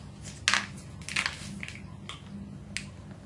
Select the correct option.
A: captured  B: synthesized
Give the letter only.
A